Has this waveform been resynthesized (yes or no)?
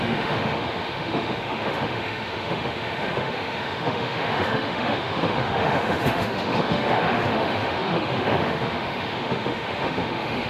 yes